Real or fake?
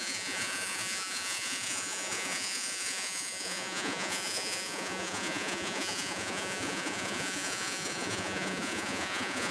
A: fake